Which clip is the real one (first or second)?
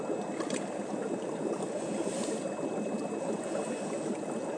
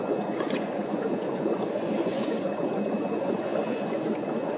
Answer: first